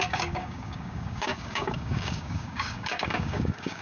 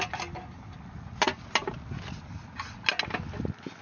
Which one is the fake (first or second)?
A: first